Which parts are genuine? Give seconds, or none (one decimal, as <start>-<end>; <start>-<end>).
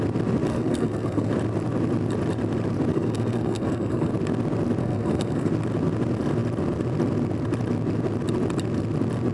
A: 0.0-0.5; 1.3-2.9; 4.1-4.8; 5.5-9.3